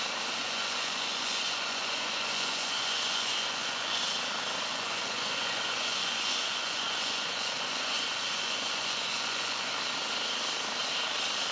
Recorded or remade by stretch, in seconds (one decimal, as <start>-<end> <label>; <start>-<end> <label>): 0.0-0.4 recorded; 0.4-4.0 remade; 4.0-4.7 recorded; 4.7-9.7 remade; 9.7-11.5 recorded